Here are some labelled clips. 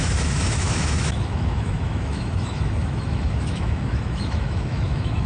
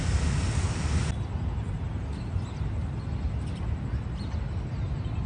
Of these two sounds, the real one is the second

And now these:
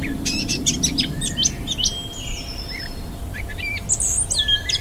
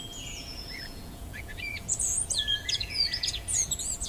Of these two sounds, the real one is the first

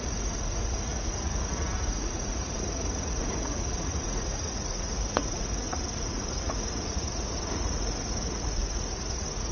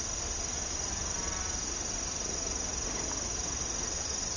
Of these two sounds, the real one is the second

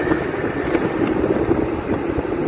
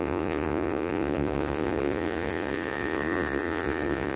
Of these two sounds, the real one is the first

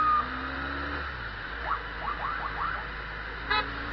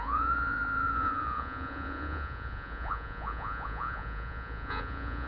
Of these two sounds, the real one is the first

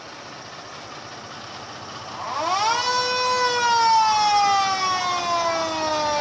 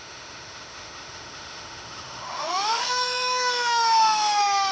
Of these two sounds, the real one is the first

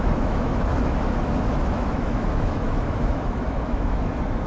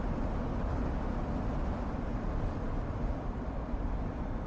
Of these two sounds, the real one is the second